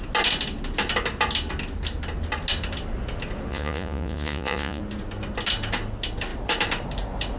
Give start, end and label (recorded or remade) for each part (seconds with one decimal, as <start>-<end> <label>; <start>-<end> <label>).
0.0-3.5 recorded; 3.5-4.8 remade; 4.8-7.4 recorded